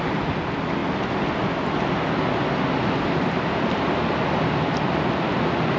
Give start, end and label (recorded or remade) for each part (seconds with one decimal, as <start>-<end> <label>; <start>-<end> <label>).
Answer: 0.0-5.8 recorded